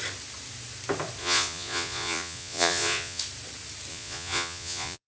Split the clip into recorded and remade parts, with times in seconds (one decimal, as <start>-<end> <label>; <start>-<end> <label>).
0.0-1.2 recorded; 1.2-3.2 remade; 3.2-3.9 recorded; 3.9-5.1 remade